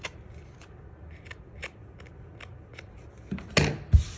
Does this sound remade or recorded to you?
recorded